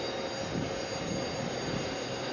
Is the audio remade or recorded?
recorded